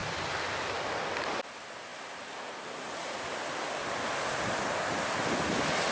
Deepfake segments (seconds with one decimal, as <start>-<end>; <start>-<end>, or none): none